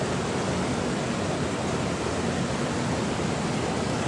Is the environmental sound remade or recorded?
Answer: recorded